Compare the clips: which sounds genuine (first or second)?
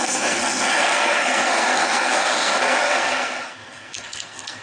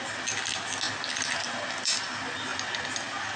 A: second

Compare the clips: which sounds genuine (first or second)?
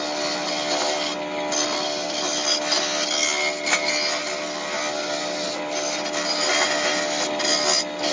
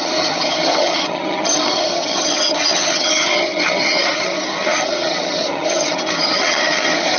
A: first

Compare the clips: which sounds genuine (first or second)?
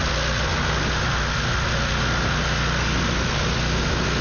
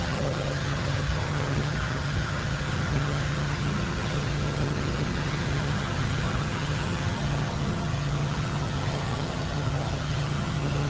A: first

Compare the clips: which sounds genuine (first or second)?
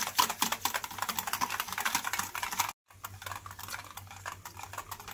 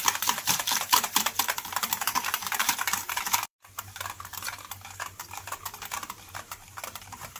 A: first